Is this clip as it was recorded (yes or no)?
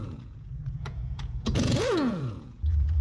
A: no